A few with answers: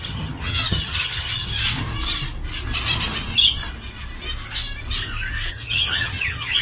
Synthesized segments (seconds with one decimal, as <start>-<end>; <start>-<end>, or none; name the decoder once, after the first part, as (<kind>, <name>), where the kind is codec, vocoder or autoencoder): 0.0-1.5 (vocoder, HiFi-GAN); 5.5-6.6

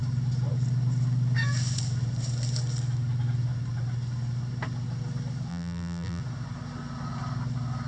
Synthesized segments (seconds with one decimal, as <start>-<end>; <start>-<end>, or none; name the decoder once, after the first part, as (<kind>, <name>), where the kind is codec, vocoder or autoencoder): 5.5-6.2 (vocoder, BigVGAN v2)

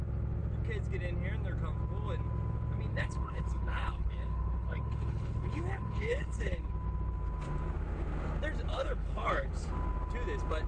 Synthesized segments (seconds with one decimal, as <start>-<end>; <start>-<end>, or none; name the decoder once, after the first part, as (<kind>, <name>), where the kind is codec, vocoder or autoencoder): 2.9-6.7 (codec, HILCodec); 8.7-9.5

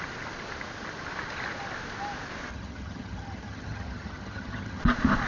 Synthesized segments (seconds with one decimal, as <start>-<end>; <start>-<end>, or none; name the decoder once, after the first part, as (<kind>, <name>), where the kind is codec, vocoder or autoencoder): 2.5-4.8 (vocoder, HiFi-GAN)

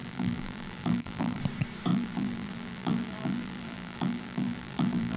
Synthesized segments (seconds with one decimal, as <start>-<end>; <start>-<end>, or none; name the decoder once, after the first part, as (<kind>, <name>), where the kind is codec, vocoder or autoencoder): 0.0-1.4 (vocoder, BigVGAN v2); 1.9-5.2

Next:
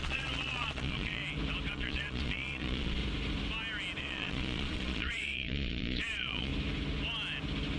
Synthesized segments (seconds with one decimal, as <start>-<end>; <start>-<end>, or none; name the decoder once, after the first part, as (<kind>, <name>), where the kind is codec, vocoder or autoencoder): 0.0-1.2 (vocoder, Vocos); 1.7-3.0; 4.0-6.5

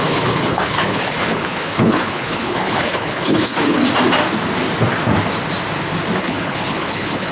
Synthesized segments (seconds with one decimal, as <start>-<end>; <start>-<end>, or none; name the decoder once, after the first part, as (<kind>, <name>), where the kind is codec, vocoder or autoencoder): 0.0-3.8 (codec, HILCodec); 6.2-7.3